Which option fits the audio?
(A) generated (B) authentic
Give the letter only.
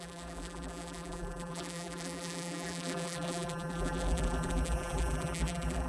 A